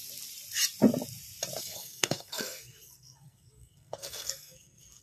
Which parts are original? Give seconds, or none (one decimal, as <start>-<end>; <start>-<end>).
0.0-1.6